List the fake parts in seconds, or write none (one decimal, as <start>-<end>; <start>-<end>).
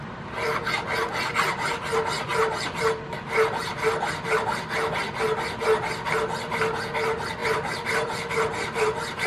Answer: 2.3-3.7; 7.4-9.3